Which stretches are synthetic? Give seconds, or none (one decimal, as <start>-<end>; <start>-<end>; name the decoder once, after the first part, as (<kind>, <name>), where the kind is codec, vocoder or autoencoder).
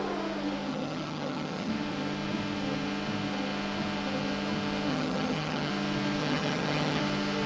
0.7-1.7 (vocoder, HiFi-GAN); 4.9-5.7; 6.2-7.0